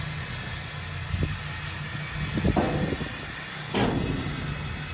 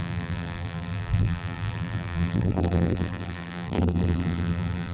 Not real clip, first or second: second